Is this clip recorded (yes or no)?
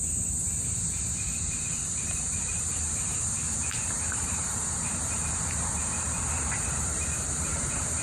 no